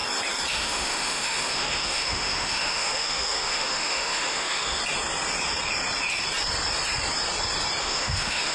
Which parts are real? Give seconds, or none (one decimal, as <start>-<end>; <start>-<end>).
0.0-0.5; 4.8-7.8